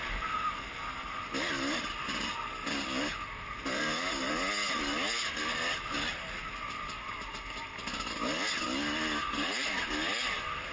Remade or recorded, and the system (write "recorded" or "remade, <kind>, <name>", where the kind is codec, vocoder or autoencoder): recorded